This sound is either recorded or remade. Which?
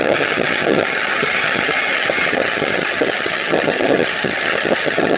remade